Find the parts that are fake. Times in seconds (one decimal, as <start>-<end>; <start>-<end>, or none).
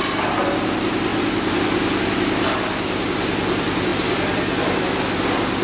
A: 1.1-2.0